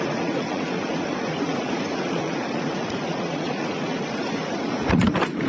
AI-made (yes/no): yes